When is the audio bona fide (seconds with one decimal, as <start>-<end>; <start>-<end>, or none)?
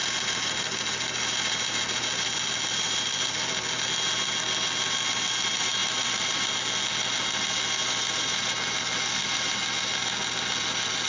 3.8-5.8; 6.5-7.8; 8.5-11.1